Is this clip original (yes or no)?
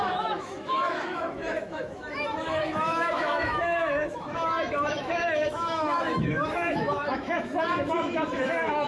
no